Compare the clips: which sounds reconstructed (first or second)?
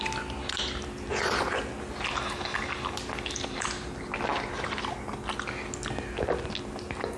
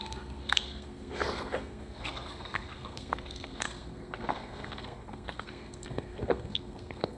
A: second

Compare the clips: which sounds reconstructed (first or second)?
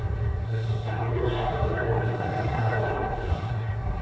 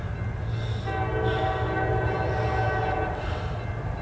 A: first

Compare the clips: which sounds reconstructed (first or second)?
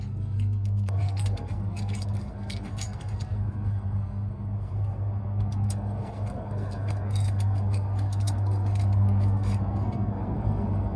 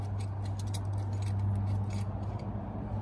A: first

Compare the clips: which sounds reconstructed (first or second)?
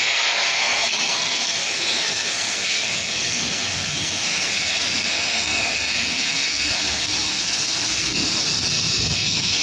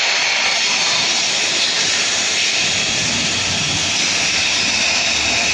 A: first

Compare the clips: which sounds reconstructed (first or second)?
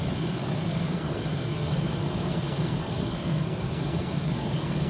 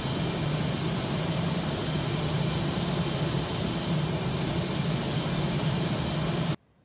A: first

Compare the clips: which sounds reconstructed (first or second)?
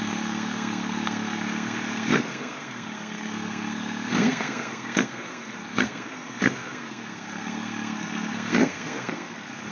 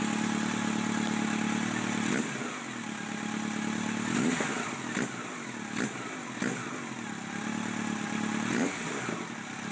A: first